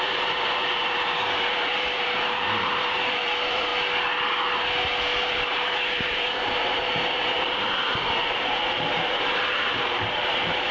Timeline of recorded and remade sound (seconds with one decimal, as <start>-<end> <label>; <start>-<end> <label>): 0.0-3.7 remade; 3.7-5.3 recorded; 5.3-10.7 remade